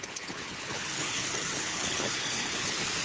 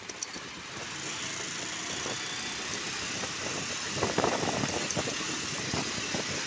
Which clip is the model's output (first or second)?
first